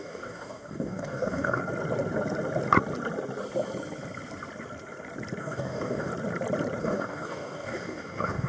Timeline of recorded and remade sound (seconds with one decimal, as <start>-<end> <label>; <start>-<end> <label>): 0.0-1.6 remade; 1.6-5.4 recorded; 5.4-6.1 remade; 6.1-6.8 recorded; 6.8-8.5 remade

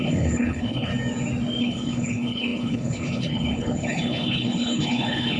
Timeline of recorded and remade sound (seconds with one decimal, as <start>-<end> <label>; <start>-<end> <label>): 0.0-0.9 remade; 0.9-1.6 recorded; 1.6-5.4 remade

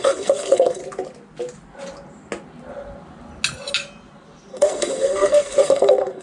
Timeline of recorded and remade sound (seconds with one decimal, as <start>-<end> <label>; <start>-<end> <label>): 0.0-0.8 remade; 0.8-4.5 recorded; 4.5-6.2 remade

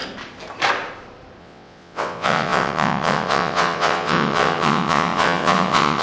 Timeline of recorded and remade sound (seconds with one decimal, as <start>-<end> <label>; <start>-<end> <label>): 0.0-1.4 recorded; 1.4-6.0 remade